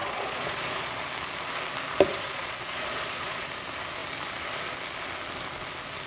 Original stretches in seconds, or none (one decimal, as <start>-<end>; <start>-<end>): 1.0-2.1; 3.5-6.1